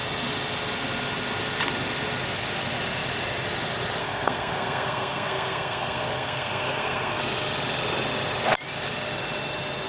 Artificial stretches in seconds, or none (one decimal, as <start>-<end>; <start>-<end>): 4.0-7.2